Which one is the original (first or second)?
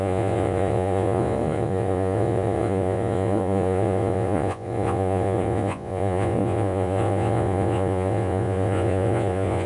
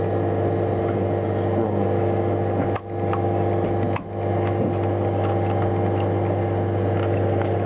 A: second